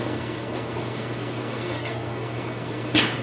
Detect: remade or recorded remade